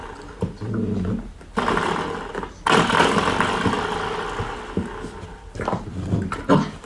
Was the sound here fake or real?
real